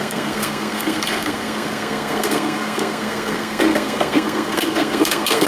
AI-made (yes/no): yes